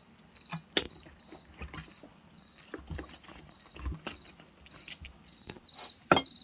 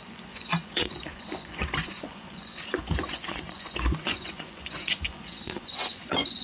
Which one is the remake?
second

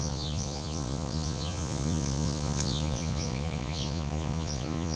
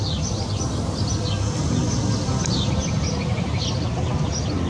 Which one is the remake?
first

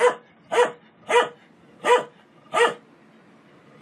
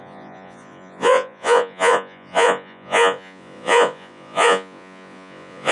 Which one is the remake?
second